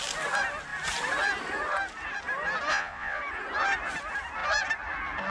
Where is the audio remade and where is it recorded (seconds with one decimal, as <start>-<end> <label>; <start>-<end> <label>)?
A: 0.0-2.7 recorded; 2.7-3.2 remade; 3.2-5.3 recorded